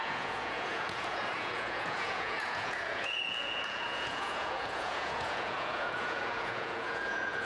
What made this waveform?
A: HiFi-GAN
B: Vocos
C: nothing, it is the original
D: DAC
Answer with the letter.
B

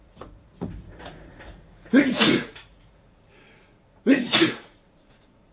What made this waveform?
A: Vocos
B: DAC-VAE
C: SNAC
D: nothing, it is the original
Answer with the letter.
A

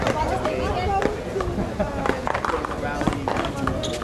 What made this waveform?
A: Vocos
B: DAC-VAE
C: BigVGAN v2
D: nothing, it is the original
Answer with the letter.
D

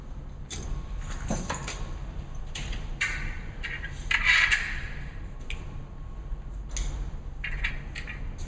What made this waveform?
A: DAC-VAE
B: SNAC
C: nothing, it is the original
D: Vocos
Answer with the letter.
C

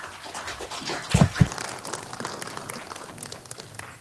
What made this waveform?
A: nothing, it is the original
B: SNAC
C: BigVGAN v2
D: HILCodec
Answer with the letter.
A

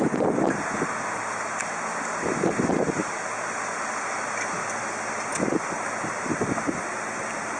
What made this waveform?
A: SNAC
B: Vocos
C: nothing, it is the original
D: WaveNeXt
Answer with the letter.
C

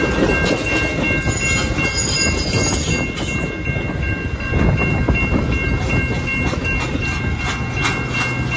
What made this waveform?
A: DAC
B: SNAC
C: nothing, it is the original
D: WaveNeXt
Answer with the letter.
C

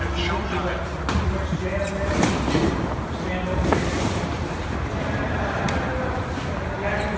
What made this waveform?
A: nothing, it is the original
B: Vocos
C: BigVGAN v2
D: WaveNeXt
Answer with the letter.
A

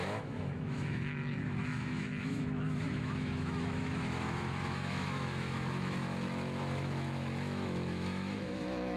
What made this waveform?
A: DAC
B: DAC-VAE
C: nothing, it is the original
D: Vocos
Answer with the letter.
B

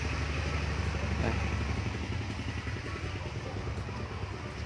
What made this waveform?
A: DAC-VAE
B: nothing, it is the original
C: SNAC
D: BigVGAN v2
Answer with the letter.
B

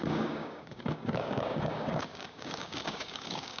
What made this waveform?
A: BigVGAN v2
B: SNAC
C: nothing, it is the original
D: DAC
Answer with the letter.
D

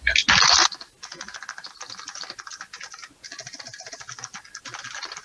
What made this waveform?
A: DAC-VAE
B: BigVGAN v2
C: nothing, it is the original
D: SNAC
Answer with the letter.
C